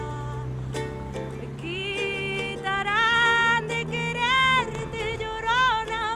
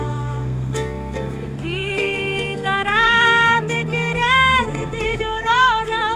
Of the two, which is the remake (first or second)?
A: second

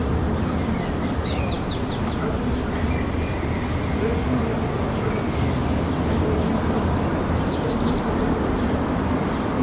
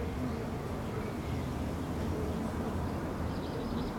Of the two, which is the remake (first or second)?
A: first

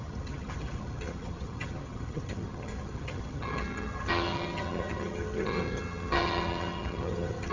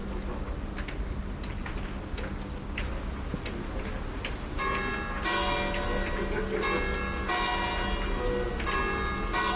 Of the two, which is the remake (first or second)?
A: first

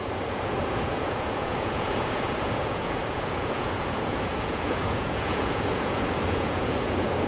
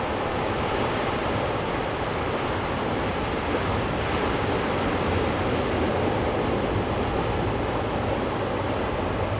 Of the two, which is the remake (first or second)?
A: first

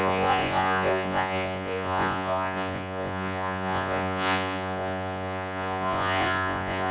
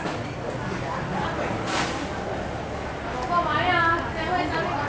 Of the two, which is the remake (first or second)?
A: first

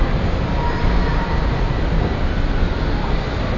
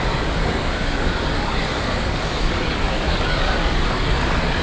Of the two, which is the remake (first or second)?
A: second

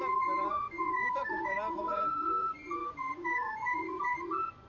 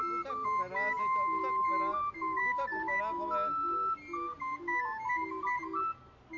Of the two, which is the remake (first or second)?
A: first